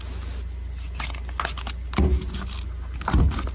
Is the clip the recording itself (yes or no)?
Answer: yes